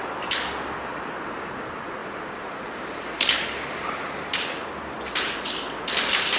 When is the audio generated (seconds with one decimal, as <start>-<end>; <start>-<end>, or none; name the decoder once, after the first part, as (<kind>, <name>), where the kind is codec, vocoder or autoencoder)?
2.0-4.7 (vocoder, BigVGAN v2)